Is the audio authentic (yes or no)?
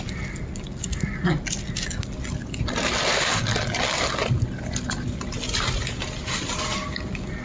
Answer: yes